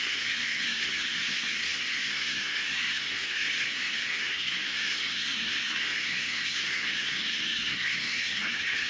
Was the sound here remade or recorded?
remade